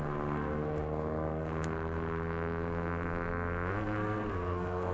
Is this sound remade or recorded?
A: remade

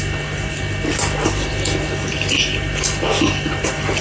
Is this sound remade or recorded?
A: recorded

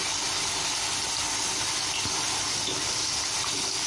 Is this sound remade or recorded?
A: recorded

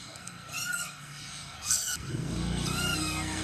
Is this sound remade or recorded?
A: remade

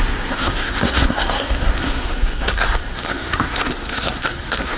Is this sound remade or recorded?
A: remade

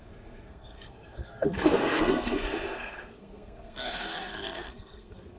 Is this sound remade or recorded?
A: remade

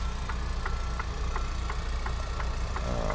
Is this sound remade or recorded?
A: recorded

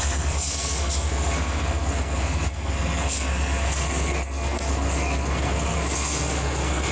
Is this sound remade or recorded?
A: remade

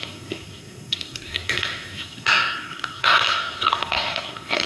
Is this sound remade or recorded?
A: remade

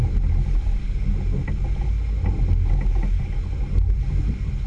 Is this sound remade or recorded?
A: recorded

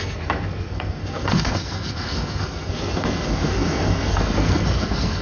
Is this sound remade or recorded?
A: remade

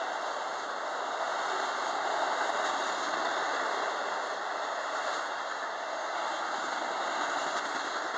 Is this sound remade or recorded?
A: recorded